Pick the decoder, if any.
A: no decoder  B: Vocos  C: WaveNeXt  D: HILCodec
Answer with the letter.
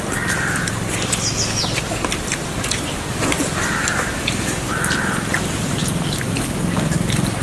A